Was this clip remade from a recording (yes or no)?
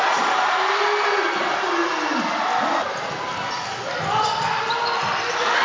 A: no